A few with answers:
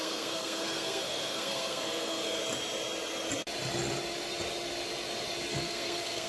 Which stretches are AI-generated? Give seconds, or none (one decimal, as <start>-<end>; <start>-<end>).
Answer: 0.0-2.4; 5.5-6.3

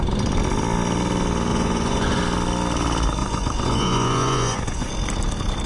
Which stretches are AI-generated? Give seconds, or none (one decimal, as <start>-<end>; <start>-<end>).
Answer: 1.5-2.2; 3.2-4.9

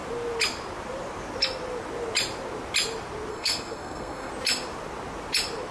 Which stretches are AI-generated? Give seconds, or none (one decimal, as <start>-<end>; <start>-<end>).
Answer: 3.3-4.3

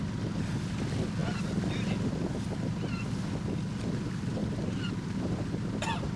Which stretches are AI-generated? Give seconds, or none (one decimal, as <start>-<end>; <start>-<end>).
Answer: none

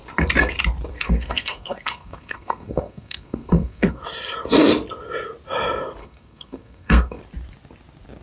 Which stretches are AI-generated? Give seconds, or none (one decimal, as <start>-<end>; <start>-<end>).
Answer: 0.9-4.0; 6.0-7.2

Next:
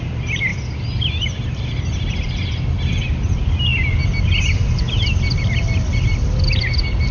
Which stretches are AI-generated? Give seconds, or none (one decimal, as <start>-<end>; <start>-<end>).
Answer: none

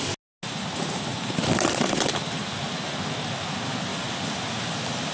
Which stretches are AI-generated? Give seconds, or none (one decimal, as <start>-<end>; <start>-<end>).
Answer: 1.1-2.5; 3.9-5.1